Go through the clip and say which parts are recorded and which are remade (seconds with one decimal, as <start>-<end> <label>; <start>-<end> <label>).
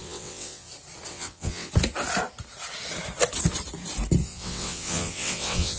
0.0-0.7 remade; 0.7-1.1 recorded; 1.1-1.7 remade; 1.7-4.2 recorded; 4.2-5.8 remade